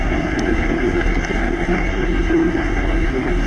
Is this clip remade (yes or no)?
yes